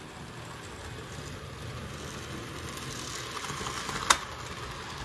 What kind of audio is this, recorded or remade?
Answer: recorded